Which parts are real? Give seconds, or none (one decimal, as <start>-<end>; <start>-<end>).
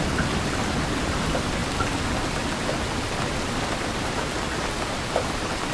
0.0-5.7